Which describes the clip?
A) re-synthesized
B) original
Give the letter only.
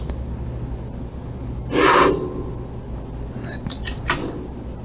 B